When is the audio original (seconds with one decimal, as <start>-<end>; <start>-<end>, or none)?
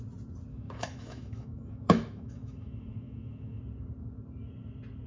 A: 0.0-0.5; 3.6-5.1